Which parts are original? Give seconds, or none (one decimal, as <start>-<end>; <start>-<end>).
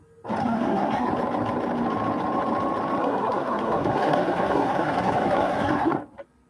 0.0-0.4; 1.1-3.0; 6.0-6.5